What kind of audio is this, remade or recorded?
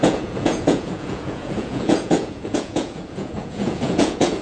remade